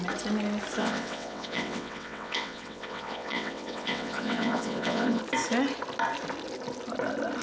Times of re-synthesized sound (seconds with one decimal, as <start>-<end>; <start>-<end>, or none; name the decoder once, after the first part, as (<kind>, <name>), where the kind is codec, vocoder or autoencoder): 0.8-5.2 (vocoder, WaveNeXt)